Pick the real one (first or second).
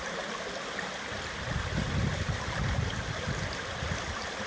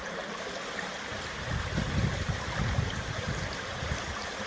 second